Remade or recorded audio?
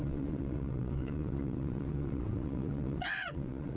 remade